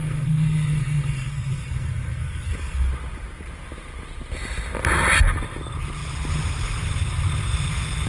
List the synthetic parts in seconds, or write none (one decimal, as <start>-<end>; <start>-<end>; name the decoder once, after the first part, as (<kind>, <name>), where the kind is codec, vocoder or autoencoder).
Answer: 0.0-2.9 (codec, SNAC)